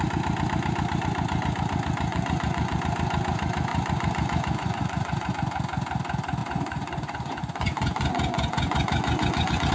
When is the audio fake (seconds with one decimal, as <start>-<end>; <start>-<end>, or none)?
2.1-2.8; 3.7-5.3; 6.4-9.7